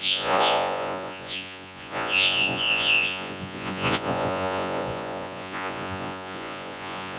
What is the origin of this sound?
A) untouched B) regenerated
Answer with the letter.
B